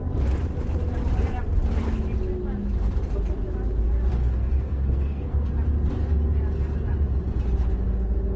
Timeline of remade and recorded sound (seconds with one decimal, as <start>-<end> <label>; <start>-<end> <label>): 0.0-4.1 recorded; 4.1-5.5 remade; 5.5-8.4 recorded

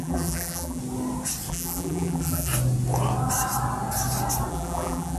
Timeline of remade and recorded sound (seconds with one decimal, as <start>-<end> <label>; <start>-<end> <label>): 0.0-0.8 remade; 0.8-1.5 recorded; 1.5-2.5 remade; 2.5-4.5 recorded; 4.5-5.2 remade

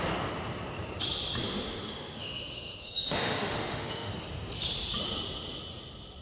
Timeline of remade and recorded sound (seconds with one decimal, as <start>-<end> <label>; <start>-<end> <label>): 0.0-1.4 recorded; 1.4-4.1 remade; 4.1-6.2 recorded

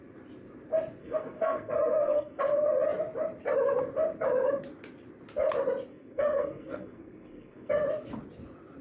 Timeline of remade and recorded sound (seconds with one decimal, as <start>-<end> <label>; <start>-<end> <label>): 0.0-1.0 recorded; 1.0-2.4 remade; 2.4-5.9 recorded; 5.9-7.7 remade; 7.7-8.8 recorded

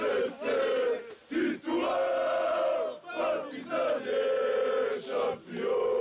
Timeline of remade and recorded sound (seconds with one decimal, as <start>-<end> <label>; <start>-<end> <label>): 0.0-6.0 recorded

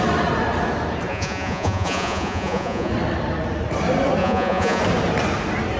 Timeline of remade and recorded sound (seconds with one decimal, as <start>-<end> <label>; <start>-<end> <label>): 0.0-1.1 recorded; 1.1-2.9 remade; 2.9-4.2 recorded; 4.2-4.8 remade; 4.8-5.8 recorded